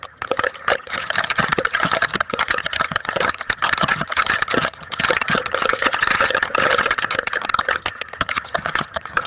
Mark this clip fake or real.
fake